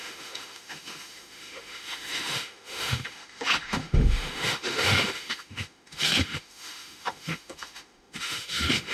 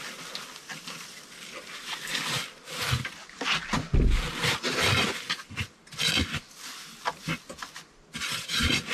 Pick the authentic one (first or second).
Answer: second